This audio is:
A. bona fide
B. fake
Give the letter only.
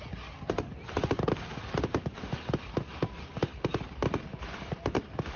B